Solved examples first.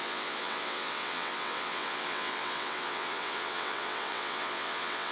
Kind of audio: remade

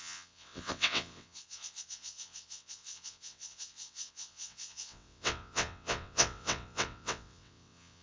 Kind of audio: remade